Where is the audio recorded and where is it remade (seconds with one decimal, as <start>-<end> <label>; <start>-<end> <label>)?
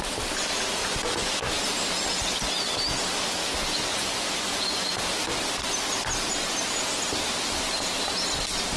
0.0-0.8 recorded; 0.8-1.5 remade; 1.5-3.9 recorded; 3.9-4.9 remade; 4.9-8.8 recorded